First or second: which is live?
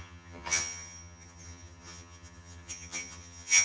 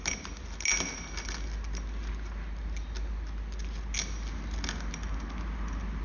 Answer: second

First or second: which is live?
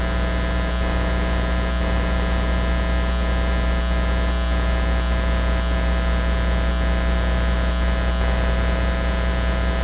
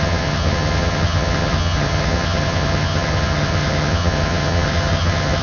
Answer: first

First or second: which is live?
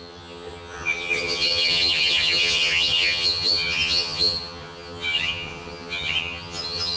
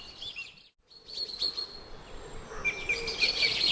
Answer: second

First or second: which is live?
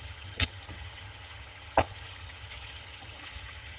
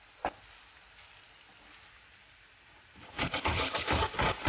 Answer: second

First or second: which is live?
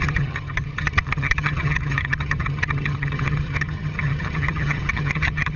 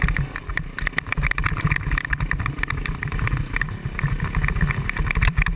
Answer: second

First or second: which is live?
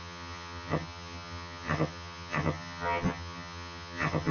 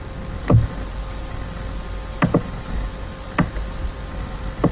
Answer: second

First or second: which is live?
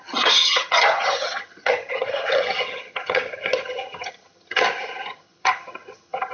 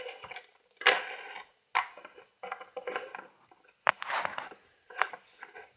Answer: second